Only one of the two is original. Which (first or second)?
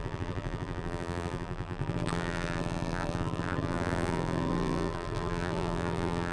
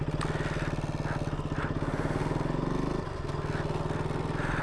second